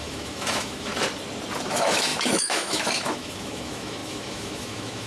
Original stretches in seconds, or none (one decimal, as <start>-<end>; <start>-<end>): 0.9-1.7